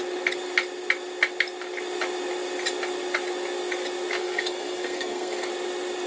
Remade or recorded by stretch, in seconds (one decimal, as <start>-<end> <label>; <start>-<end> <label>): 0.0-4.2 recorded; 4.2-5.5 remade; 5.5-6.1 recorded